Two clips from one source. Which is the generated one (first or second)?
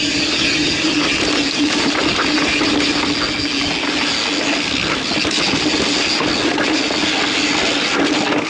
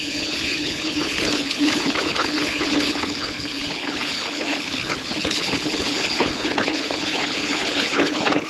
second